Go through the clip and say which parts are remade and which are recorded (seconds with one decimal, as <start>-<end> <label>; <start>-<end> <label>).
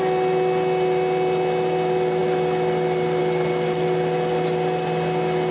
0.0-5.5 recorded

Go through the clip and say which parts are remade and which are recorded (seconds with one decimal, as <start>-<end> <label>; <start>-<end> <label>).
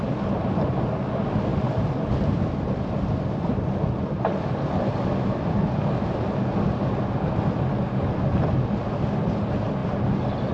0.0-10.5 recorded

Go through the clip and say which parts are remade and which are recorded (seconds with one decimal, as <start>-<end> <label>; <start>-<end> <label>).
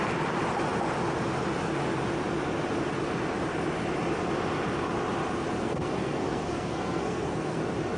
0.0-5.6 recorded; 5.6-7.6 remade; 7.6-8.0 recorded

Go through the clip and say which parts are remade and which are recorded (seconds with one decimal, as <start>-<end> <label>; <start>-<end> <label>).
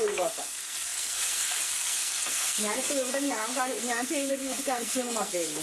0.0-5.6 remade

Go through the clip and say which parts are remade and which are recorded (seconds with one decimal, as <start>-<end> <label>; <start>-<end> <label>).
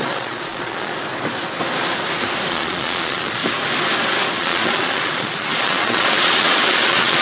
0.0-0.9 remade; 0.9-2.5 recorded; 2.5-3.4 remade; 3.4-4.4 recorded; 4.4-7.2 remade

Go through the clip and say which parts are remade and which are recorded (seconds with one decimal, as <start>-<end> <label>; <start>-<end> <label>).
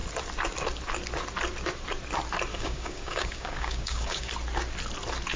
0.0-2.5 recorded; 2.5-4.3 remade; 4.3-5.4 recorded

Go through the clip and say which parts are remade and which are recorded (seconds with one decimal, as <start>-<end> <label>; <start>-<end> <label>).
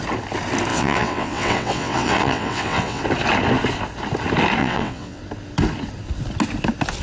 0.0-0.7 recorded; 0.7-3.0 remade; 3.0-4.6 recorded; 4.6-5.2 remade; 5.2-7.0 recorded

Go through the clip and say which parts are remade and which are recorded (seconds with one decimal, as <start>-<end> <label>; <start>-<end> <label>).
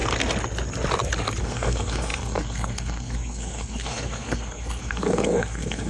0.0-1.4 recorded; 1.4-5.9 remade